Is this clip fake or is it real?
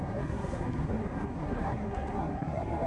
fake